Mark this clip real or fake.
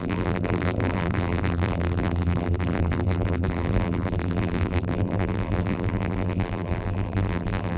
fake